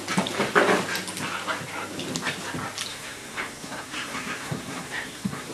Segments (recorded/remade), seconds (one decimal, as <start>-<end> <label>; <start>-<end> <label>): 0.0-2.9 recorded; 2.9-5.5 remade